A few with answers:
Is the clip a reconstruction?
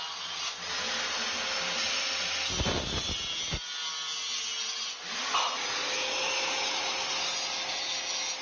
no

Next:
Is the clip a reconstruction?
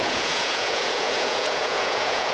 yes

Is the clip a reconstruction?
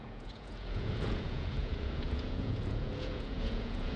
yes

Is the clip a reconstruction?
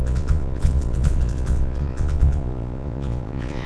yes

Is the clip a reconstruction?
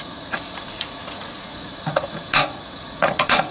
yes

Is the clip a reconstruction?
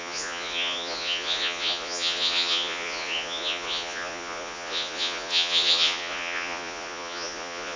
yes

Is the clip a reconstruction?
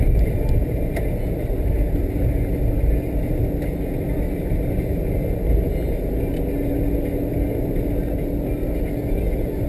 no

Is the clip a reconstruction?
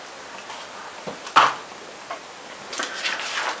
no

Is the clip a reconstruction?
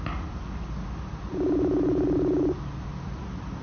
no